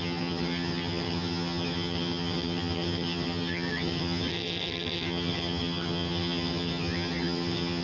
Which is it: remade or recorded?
remade